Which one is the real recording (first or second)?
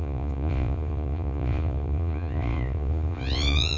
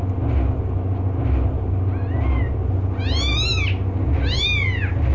second